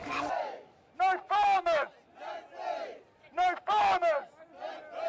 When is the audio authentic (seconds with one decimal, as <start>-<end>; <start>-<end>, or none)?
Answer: 0.9-5.1